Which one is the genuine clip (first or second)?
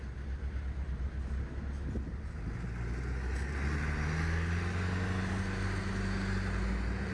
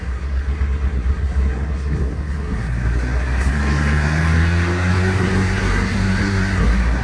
first